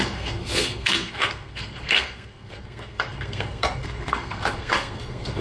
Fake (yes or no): yes